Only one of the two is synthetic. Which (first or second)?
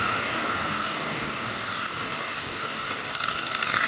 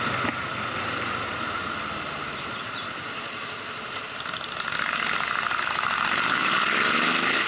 first